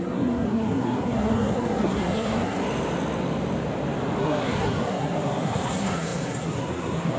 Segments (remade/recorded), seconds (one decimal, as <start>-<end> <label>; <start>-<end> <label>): 0.0-2.6 remade; 2.6-4.2 recorded; 4.2-7.2 remade